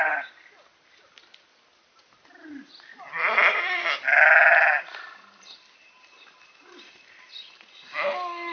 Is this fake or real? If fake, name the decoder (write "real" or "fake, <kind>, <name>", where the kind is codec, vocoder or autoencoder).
real